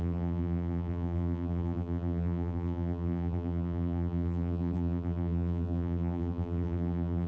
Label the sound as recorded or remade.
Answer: remade